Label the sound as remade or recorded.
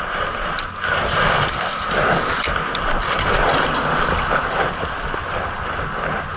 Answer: recorded